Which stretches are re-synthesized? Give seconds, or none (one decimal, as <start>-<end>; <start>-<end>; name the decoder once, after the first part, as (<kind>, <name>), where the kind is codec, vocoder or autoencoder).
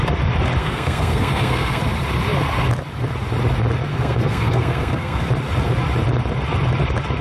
0.6-1.8 (codec, SNAC); 3.9-5.2